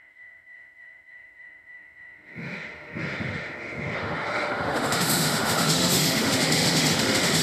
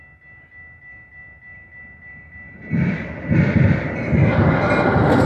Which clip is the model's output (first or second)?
first